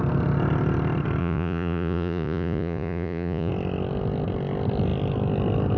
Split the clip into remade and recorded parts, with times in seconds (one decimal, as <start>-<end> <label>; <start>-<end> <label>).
0.0-1.2 recorded; 1.2-3.5 remade; 3.5-5.8 recorded